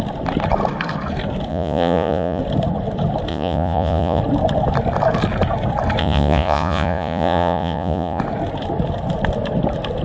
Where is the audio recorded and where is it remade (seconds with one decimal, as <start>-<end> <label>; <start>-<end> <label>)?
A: 0.0-1.5 recorded; 1.5-2.4 remade; 2.4-3.3 recorded; 3.3-4.2 remade; 4.2-6.0 recorded; 6.0-8.2 remade; 8.2-10.0 recorded